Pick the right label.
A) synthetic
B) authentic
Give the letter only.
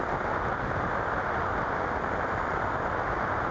B